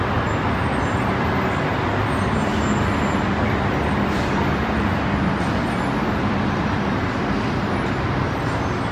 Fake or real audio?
real